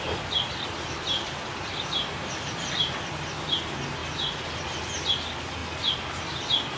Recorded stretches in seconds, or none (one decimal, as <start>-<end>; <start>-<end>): 0.0-6.8